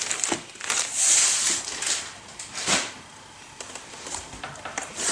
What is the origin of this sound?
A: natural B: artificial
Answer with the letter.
A